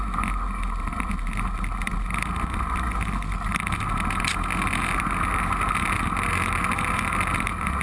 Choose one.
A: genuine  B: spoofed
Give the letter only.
A